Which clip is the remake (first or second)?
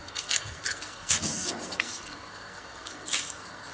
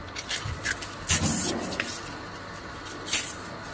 first